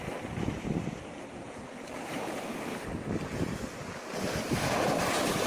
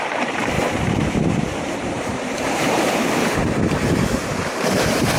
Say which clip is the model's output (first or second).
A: second